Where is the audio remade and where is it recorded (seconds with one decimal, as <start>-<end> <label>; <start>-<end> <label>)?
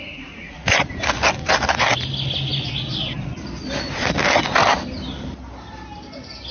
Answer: 0.0-1.0 remade; 1.0-6.5 recorded